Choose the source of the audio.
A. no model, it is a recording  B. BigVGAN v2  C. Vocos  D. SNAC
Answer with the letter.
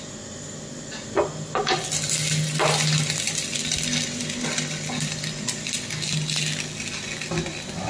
A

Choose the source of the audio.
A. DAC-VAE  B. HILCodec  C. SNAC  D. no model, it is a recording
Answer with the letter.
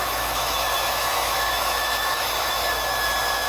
A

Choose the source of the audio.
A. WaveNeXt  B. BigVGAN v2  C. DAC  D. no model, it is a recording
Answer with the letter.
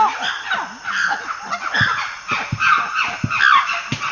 D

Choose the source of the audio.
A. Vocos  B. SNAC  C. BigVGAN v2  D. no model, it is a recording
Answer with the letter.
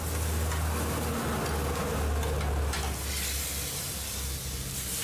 D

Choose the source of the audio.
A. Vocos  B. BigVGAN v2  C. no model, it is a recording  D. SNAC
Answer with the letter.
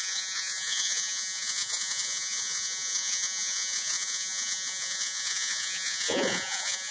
A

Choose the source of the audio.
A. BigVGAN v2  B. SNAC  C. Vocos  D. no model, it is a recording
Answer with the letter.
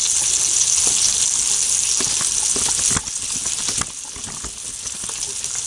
D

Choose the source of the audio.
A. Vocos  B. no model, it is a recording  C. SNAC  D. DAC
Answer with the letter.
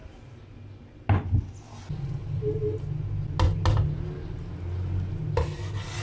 B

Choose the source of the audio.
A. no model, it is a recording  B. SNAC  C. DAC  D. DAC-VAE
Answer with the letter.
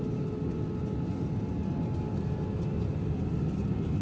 A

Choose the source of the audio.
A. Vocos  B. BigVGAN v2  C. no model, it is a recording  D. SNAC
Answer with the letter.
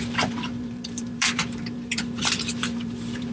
B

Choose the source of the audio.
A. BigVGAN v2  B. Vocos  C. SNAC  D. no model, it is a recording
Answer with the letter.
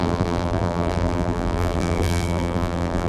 A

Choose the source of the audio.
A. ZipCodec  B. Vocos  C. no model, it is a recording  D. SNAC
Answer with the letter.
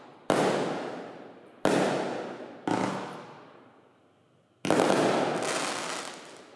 C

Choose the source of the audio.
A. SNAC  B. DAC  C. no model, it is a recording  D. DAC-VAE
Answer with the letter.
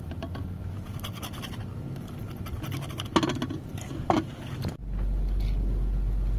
C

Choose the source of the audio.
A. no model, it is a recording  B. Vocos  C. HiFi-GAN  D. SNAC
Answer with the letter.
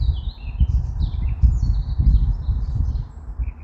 A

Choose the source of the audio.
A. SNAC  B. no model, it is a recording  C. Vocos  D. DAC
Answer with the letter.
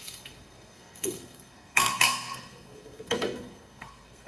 A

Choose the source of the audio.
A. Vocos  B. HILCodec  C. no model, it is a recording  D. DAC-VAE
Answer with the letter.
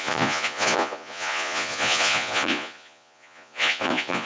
A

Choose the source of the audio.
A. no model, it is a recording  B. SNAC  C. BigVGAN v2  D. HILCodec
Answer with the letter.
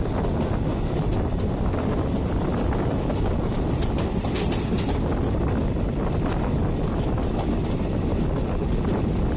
A